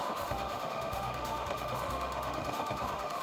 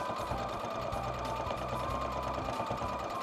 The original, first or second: second